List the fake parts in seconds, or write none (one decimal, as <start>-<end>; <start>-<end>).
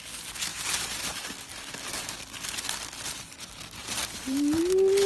0.5-1.3; 3.8-4.6